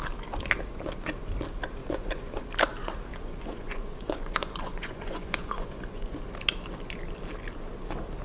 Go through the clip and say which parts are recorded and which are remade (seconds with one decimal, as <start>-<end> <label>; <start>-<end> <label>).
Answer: 0.0-1.8 recorded; 1.8-2.4 remade; 2.4-3.1 recorded; 3.1-6.2 remade; 6.2-8.2 recorded